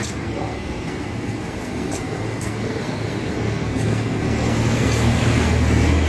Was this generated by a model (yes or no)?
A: yes